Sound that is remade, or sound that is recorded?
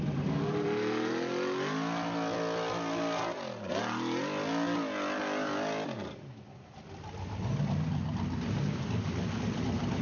recorded